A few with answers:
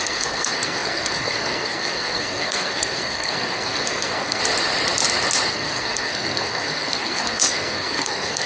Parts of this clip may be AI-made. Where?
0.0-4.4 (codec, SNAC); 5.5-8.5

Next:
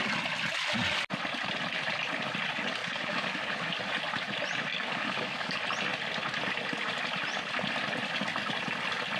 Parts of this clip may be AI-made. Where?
2.8-3.8 (codec, DAC); 4.7-5.6

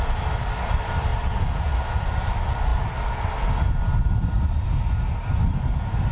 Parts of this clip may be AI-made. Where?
none

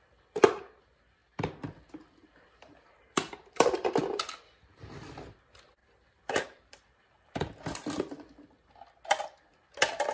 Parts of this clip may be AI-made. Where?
2.2-4.0 (vocoder, BigVGAN v2); 5.8-8.7

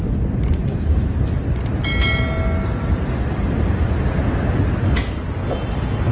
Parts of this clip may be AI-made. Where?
none

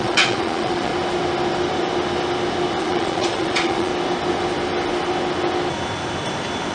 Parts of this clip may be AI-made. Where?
0.0-0.9 (vocoder, Vocos); 2.8-3.9

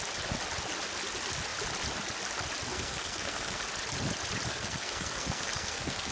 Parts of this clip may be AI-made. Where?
2.7-3.6 (codec, SNAC); 4.5-6.1

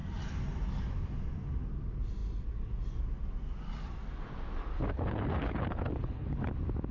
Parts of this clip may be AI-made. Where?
4.7-6.5 (codec, HILCodec)